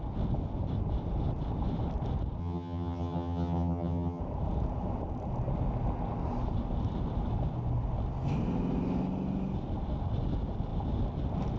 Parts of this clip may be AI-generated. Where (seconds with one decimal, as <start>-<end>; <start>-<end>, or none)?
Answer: 2.4-4.2